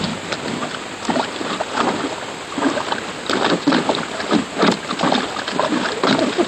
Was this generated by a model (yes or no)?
no